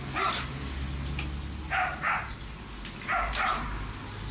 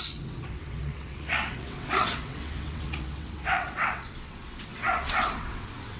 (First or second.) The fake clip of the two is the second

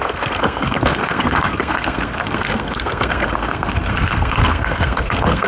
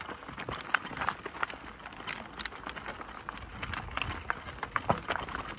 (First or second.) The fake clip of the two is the first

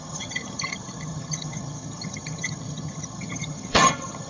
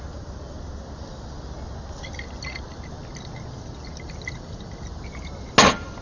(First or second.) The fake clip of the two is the first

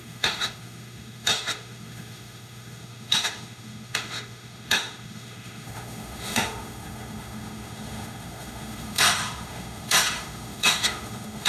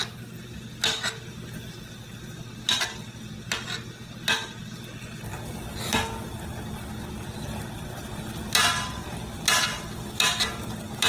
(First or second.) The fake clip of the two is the first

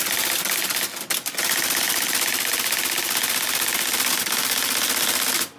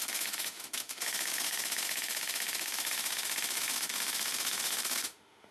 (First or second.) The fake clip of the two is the second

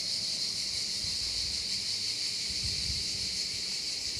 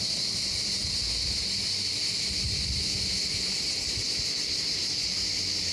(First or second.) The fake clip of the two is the first